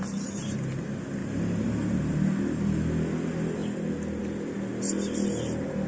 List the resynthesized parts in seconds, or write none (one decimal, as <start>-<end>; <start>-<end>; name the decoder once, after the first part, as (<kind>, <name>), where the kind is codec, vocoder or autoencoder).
none

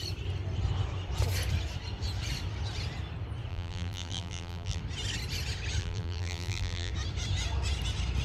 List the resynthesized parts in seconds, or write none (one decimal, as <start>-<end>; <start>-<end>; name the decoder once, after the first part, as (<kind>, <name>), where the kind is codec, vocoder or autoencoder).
3.5-4.8 (vocoder, BigVGAN v2); 5.8-6.9

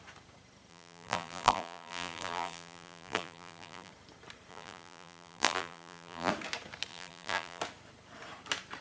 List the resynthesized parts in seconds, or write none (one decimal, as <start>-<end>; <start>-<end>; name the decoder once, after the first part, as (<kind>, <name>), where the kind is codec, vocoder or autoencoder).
0.7-3.9 (vocoder, BigVGAN v2); 4.5-6.3; 6.9-7.6

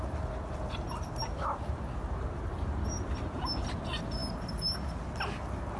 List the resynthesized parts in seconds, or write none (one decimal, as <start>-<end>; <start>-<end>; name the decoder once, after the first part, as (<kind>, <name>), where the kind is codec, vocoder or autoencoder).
1.2-3.4 (vocoder, BigVGAN v2)